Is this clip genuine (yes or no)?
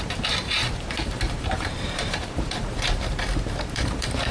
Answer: no